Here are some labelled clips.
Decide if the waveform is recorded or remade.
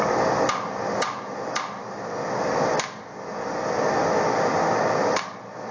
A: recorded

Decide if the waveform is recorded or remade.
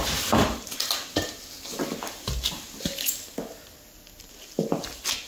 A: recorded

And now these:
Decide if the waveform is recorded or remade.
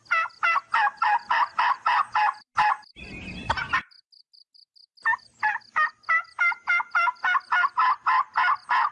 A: recorded